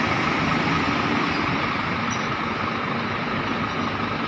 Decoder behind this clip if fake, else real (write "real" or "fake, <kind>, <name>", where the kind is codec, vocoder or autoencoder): real